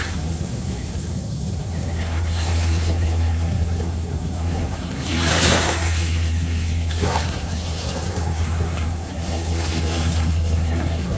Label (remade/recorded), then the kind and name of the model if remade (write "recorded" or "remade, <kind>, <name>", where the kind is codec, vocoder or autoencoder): remade, codec, SNAC